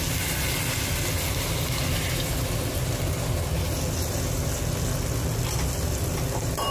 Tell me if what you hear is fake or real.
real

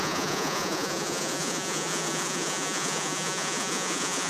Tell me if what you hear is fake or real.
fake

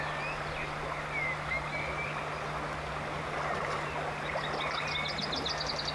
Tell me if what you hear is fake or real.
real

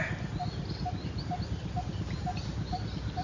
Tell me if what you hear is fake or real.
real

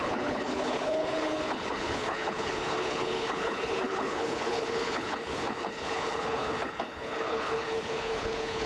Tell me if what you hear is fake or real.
fake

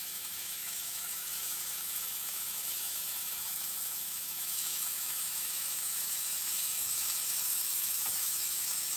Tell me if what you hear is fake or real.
fake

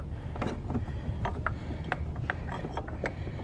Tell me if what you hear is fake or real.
real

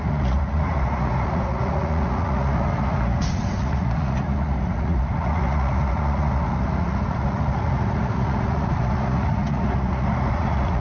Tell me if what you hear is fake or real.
fake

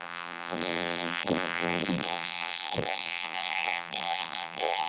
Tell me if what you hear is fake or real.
fake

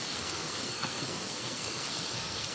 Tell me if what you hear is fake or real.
fake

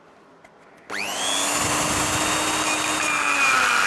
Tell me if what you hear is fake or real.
real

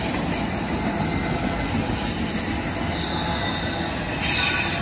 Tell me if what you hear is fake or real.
real